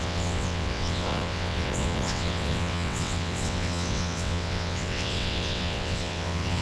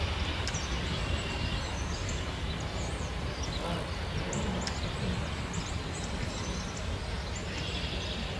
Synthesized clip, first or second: first